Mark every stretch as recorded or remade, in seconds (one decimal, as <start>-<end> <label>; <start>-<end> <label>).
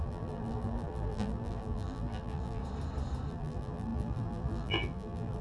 0.0-2.6 remade; 2.6-3.3 recorded; 3.3-5.4 remade